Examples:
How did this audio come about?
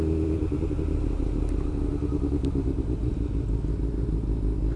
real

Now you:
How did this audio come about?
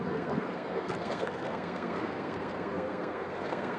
fake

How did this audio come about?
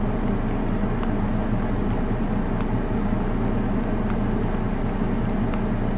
real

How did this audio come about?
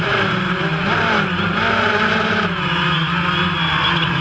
fake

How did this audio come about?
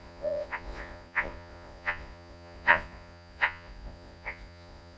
fake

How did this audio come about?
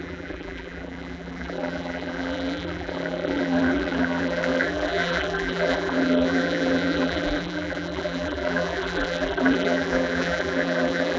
fake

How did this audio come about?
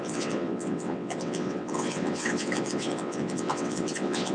fake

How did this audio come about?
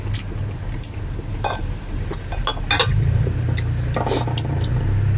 real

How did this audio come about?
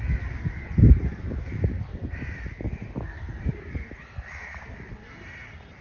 real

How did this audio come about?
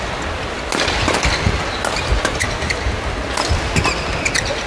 real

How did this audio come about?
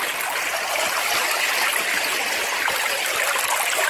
real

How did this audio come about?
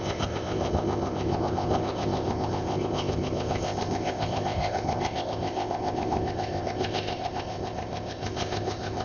fake